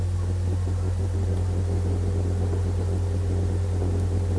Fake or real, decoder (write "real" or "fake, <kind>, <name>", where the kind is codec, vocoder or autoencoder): real